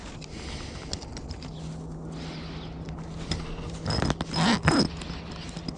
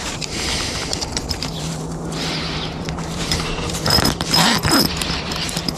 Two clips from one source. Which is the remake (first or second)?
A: second